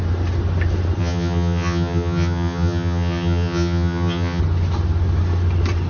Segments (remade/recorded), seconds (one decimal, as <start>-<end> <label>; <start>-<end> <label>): 0.0-1.0 recorded; 1.0-4.4 remade; 4.4-5.9 recorded